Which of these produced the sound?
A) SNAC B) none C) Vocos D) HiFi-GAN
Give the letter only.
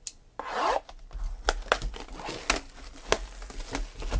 B